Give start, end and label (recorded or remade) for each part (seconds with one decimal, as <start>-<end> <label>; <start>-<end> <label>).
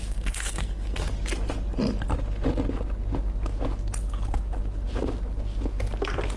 0.0-1.0 remade; 1.0-6.4 recorded